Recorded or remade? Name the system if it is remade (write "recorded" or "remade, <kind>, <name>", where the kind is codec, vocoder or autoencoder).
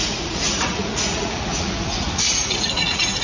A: remade, vocoder, Vocos